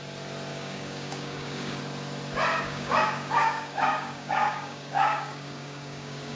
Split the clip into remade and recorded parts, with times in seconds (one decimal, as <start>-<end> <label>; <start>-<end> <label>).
0.0-0.5 recorded; 0.5-1.8 remade; 1.8-2.5 recorded; 2.5-6.4 remade